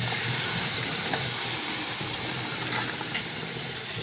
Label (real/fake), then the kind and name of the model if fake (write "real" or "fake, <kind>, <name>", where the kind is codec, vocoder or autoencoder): fake, vocoder, BigVGAN v2